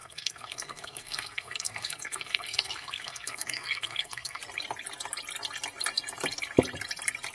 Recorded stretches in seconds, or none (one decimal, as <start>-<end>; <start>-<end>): 4.4-7.3